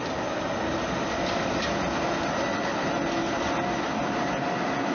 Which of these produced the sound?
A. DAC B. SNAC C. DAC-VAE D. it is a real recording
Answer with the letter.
D